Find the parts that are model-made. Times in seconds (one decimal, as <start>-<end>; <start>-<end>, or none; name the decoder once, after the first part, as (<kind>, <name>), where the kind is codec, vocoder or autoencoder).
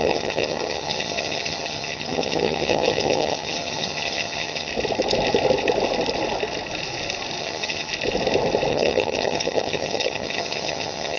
0.0-4.7 (vocoder, HiFi-GAN); 7.4-7.9; 8.7-11.2